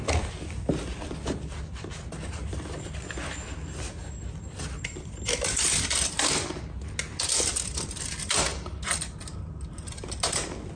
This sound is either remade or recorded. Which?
recorded